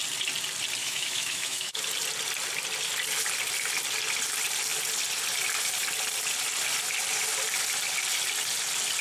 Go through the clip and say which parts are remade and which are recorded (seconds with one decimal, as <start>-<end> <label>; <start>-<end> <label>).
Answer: 0.0-0.8 recorded; 0.8-1.8 remade; 1.8-9.0 recorded